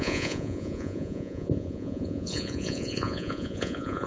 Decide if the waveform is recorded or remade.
remade